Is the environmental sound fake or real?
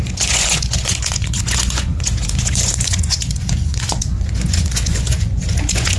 fake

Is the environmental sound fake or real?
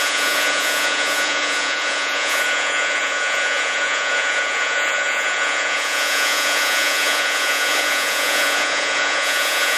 fake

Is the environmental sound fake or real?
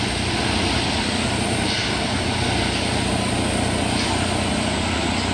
real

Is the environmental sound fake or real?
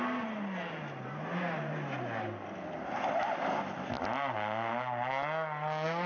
real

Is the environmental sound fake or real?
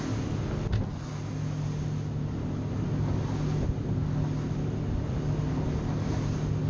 real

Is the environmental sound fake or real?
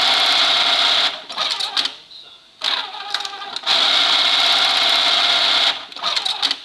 real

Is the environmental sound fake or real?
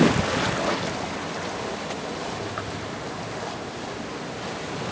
real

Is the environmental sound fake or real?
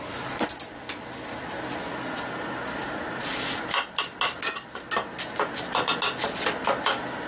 real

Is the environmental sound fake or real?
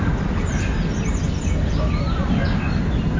real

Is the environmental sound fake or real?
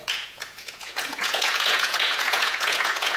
fake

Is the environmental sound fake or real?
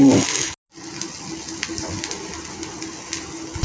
real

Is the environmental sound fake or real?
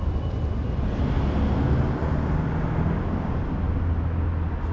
real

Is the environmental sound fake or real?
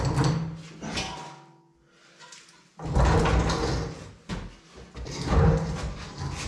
real